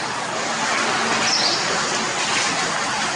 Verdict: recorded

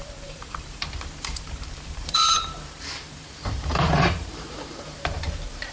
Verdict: remade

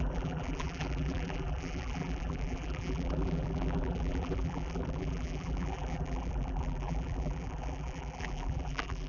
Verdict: remade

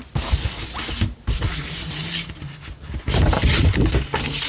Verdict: recorded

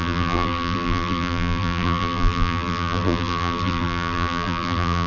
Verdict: remade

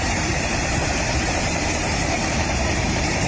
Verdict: remade